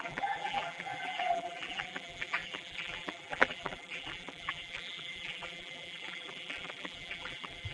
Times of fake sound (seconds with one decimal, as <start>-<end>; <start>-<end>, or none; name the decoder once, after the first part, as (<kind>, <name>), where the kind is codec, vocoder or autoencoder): 0.0-7.7 (vocoder, BigVGAN v2)